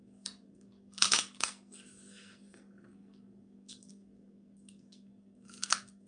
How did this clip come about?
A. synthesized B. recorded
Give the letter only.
A